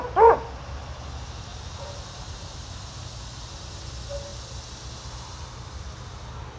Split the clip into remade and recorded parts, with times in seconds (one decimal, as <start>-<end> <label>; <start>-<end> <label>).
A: 0.0-1.5 recorded; 1.5-2.9 remade; 2.9-6.6 recorded